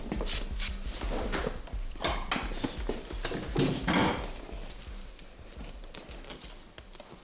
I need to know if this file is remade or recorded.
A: recorded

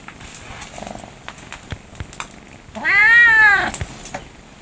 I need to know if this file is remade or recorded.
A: recorded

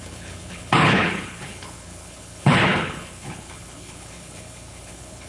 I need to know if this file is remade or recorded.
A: remade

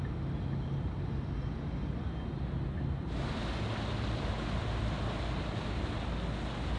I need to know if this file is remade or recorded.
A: recorded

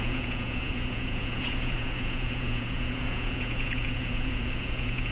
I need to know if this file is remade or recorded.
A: remade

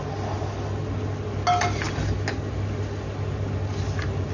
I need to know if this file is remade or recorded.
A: recorded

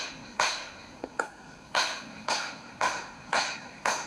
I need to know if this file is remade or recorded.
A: remade